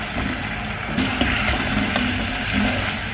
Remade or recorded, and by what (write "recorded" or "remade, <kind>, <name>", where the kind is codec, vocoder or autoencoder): recorded